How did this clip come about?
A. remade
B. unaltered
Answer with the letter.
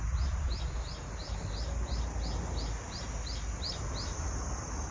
B